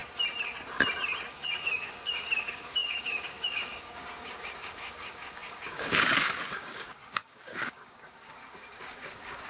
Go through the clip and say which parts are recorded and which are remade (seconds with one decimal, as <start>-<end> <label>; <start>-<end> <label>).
0.0-1.3 recorded; 1.3-9.5 remade

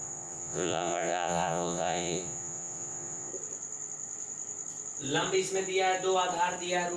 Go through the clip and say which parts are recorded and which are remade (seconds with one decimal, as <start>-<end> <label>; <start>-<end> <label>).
0.0-3.3 remade; 3.3-7.0 recorded

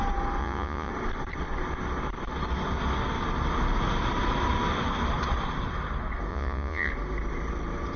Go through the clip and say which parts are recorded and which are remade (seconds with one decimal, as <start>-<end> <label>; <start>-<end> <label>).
0.0-0.4 recorded; 0.4-0.9 remade; 0.9-6.3 recorded; 6.3-6.9 remade; 6.9-8.0 recorded